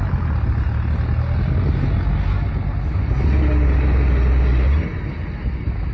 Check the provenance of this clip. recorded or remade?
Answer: recorded